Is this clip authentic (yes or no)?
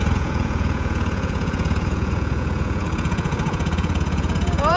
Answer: no